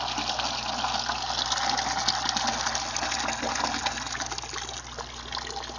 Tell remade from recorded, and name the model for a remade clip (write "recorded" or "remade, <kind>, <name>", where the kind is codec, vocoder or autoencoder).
recorded